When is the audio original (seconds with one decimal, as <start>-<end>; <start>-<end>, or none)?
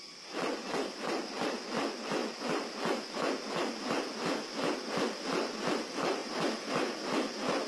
0.0-7.7